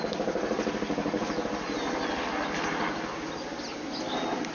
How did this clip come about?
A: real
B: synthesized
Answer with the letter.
A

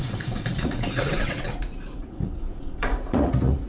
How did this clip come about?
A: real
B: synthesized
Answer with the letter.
B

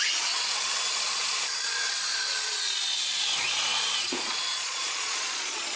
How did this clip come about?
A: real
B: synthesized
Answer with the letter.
B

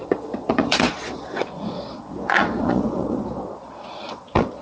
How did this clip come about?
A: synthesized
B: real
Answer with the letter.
A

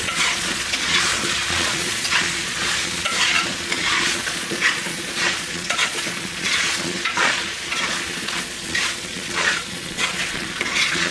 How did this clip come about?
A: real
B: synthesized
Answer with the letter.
B